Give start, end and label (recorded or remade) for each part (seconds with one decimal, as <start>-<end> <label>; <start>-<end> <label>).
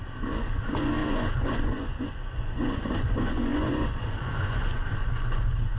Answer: 0.0-5.8 remade